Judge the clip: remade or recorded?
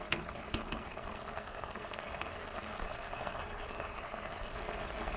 remade